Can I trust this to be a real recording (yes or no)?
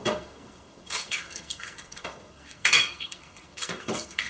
no